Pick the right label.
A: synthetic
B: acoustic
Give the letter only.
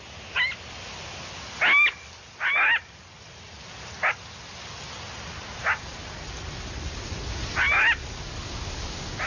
B